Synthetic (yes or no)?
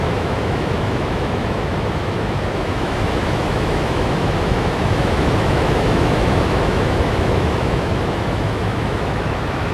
yes